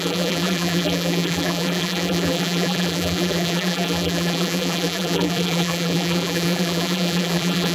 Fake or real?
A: fake